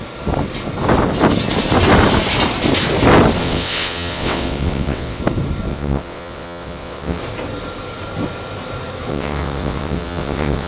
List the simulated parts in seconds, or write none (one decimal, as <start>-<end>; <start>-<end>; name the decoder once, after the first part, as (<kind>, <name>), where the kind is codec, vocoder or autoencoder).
3.4-5.2 (vocoder, WaveNeXt); 5.7-7.2; 9.1-10.7